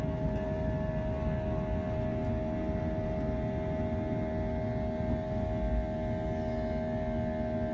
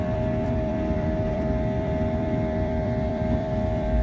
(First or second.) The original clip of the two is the first